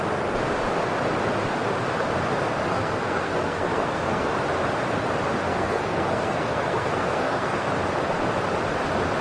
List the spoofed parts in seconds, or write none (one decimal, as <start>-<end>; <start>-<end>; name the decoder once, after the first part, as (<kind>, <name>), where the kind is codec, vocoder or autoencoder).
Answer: 2.7-4.3 (codec, SNAC); 5.5-7.7